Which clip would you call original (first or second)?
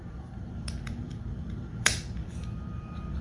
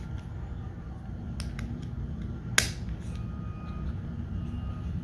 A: second